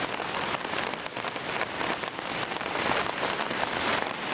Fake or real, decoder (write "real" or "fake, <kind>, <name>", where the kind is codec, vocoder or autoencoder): real